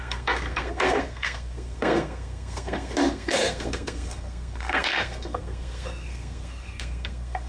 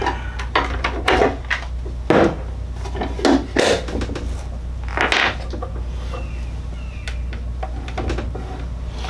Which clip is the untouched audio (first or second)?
second